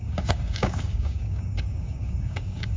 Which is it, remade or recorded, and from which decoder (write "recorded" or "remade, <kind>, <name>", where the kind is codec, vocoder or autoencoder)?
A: remade, codec, DAC